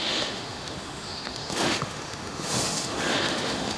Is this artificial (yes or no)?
yes